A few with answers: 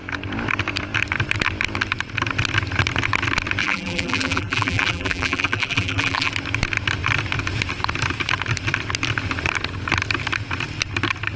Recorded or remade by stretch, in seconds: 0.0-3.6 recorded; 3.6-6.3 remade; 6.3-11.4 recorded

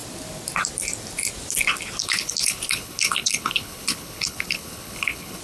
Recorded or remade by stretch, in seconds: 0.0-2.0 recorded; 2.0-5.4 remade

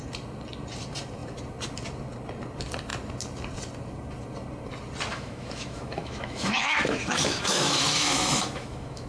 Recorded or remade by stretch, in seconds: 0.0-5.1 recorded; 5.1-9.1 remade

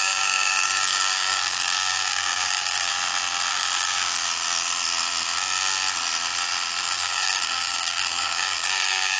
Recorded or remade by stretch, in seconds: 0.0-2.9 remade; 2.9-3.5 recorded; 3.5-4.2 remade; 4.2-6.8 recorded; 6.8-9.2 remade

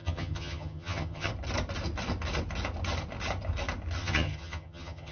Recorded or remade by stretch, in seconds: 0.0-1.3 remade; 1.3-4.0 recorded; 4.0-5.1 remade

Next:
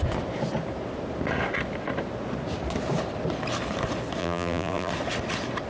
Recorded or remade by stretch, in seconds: 0.0-4.2 recorded; 4.2-4.9 remade; 4.9-5.7 recorded

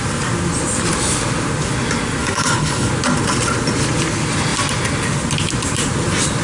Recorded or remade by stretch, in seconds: 0.0-2.2 recorded; 2.2-2.9 remade; 2.9-6.4 recorded